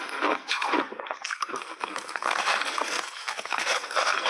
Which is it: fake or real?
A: fake